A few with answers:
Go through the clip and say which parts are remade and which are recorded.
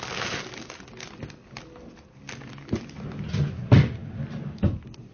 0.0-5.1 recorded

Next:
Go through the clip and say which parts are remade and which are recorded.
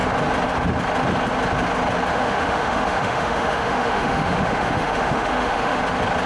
0.0-2.1 recorded; 2.1-5.8 remade; 5.8-6.3 recorded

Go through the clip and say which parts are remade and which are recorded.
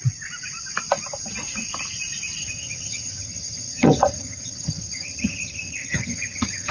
0.0-2.4 recorded; 2.4-6.7 remade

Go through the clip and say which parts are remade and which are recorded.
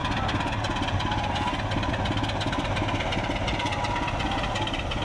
0.0-5.0 recorded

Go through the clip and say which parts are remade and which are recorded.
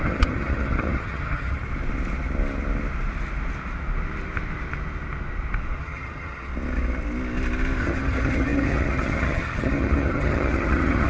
0.0-1.6 remade; 1.6-5.8 recorded; 5.8-6.5 remade; 6.5-7.8 recorded; 7.8-11.1 remade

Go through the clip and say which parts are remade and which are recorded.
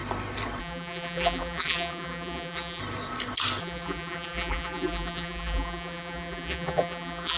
0.0-0.6 recorded; 0.6-2.8 remade; 2.8-3.6 recorded; 3.6-7.4 remade